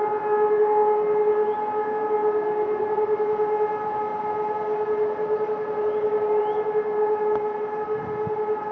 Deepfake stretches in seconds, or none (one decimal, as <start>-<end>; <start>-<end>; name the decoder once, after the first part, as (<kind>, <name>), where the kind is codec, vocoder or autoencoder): none